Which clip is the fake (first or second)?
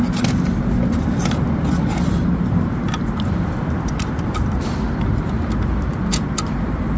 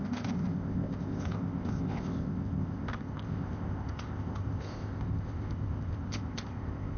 second